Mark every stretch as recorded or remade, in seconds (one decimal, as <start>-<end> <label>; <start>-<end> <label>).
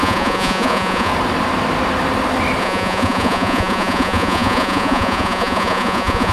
0.0-1.1 remade; 1.1-2.6 recorded; 2.6-6.3 remade